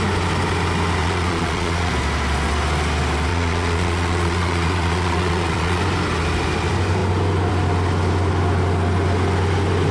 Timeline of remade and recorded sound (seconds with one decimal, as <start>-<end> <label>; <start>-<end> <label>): 0.0-1.0 recorded; 1.0-1.9 remade; 1.9-3.3 recorded; 3.3-5.8 remade; 5.8-9.9 recorded